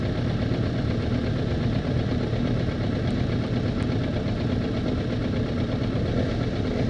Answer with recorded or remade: recorded